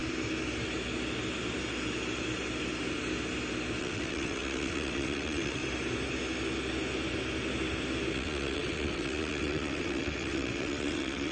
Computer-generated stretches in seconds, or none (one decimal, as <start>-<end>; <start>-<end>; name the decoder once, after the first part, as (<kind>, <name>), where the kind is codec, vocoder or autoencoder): 3.8-5.6 (vocoder, WaveNeXt); 8.1-11.3